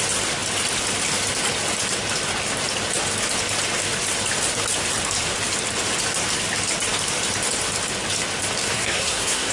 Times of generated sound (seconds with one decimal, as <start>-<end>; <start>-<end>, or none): 8.6-9.5